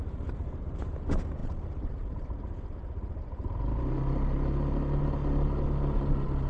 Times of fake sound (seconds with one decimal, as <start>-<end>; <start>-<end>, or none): none